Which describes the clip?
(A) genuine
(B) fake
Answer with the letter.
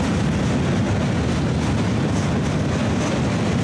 A